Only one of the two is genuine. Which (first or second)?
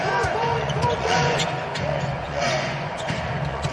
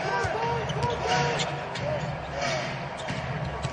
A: second